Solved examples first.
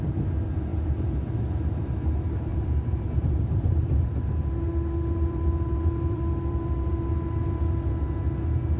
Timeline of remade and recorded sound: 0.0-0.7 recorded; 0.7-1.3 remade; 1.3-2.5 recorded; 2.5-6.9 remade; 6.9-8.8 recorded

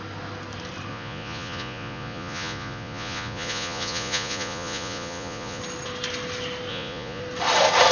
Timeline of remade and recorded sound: 0.0-0.9 recorded; 0.9-5.6 remade; 5.6-6.7 recorded; 6.7-7.2 remade; 7.2-7.9 recorded